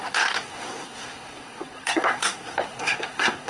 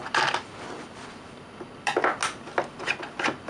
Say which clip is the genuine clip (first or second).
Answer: second